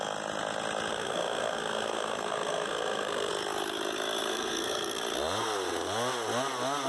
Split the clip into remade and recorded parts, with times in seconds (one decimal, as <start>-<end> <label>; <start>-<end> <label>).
0.0-0.9 recorded; 0.9-3.3 remade; 3.3-4.3 recorded; 4.3-5.0 remade; 5.0-6.9 recorded